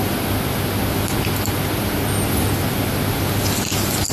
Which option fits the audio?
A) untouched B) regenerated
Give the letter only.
A